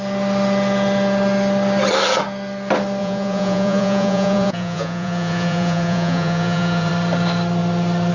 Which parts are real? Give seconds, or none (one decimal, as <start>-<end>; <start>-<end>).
0.0-3.0; 6.9-8.1